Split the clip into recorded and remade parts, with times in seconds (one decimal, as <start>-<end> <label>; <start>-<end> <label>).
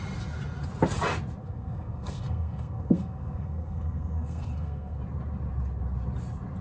0.0-1.4 recorded; 1.4-5.0 remade; 5.0-6.6 recorded